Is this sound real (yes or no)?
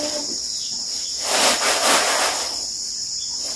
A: yes